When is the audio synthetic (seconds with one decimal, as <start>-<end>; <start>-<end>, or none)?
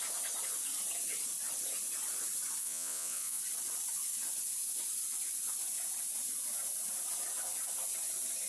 2.6-3.4